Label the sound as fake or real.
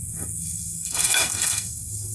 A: fake